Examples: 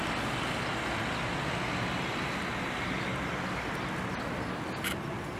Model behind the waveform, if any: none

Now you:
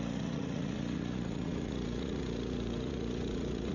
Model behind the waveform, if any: vocoder, Vocos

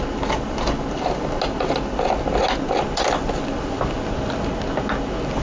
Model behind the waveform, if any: none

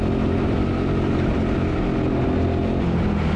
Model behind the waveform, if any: none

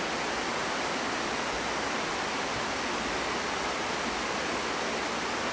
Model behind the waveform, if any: none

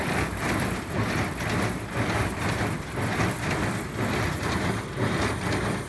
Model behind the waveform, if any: vocoder, BigVGAN v2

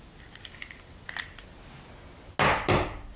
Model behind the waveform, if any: none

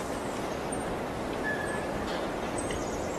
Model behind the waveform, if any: none